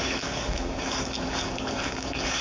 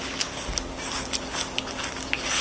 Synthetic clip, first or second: first